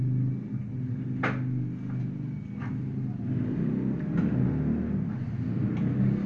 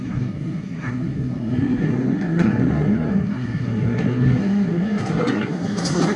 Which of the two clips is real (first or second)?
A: first